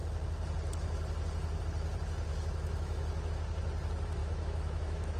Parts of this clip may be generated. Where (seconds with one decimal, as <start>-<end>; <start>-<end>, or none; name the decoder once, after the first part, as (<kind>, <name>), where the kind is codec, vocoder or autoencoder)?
2.3-3.3 (autoencoder, DAC-VAE); 4.2-5.2